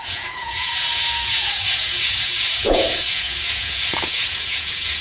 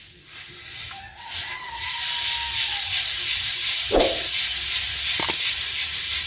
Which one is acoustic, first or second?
second